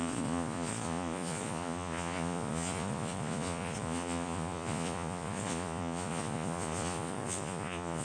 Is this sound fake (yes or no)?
yes